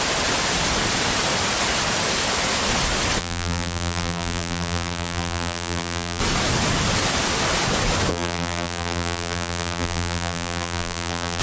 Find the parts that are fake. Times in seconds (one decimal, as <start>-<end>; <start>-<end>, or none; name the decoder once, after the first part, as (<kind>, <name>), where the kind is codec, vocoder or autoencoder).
3.2-6.2 (vocoder, BigVGAN v2); 8.1-11.4